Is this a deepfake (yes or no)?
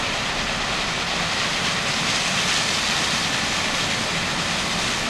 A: no